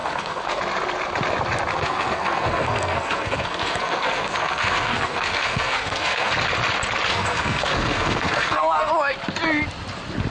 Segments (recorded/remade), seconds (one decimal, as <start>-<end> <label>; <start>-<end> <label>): 0.0-0.6 remade; 0.6-1.7 recorded; 1.7-6.3 remade; 6.3-7.1 recorded; 7.1-8.9 remade; 8.9-10.3 recorded